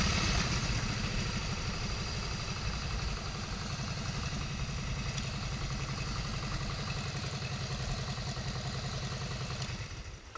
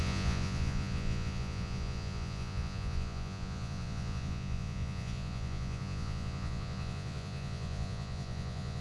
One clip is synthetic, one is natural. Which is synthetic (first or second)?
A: second